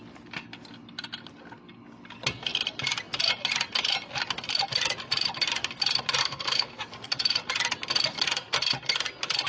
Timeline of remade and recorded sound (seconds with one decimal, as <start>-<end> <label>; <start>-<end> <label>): 0.0-6.2 recorded; 6.2-6.8 remade; 6.8-9.5 recorded